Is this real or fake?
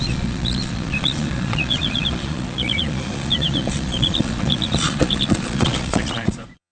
fake